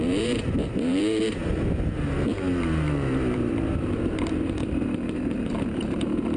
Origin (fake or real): fake